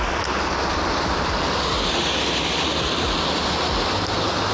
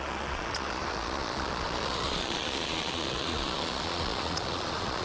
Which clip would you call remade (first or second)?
second